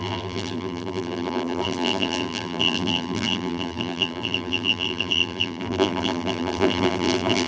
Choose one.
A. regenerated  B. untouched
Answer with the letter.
A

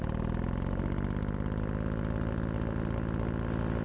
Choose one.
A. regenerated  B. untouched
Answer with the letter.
B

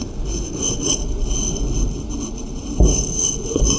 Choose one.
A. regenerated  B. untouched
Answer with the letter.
B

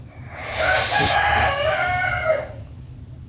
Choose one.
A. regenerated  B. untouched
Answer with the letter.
B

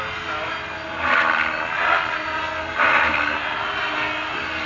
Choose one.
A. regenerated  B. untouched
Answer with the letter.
B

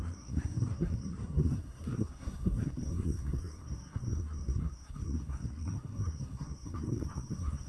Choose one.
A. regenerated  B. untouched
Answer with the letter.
A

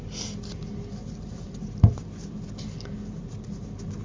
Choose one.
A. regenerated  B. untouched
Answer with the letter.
B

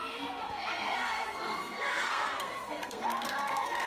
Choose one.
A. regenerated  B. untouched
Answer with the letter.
A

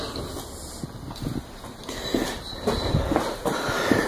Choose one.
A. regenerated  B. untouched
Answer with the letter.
B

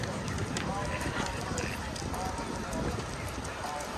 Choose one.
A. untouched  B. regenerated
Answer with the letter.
A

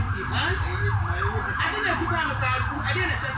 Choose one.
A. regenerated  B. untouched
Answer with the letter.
B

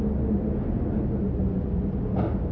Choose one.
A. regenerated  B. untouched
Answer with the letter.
B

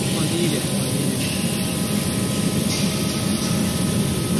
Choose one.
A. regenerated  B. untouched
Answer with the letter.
B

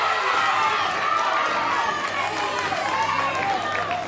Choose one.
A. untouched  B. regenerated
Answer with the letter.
A